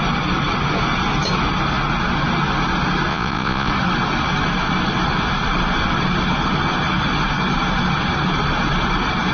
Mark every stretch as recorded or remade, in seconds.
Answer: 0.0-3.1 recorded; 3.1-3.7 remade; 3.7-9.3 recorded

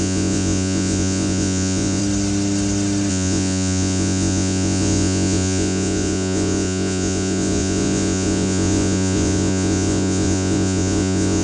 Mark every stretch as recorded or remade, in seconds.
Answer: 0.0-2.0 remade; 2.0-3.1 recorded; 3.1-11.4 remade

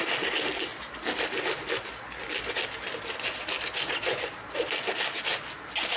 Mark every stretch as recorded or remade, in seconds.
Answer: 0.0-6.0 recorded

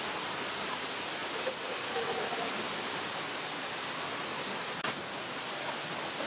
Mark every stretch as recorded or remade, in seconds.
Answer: 0.0-6.3 recorded

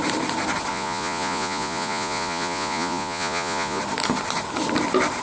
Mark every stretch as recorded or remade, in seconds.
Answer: 0.0-0.7 recorded; 0.7-3.8 remade; 3.8-5.2 recorded